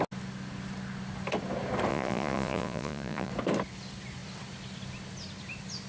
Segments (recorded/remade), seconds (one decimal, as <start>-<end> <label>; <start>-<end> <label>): 0.0-1.9 recorded; 1.9-3.3 remade; 3.3-5.9 recorded